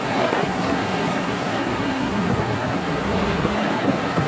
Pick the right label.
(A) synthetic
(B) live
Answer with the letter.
A